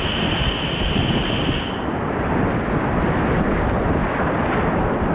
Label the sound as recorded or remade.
recorded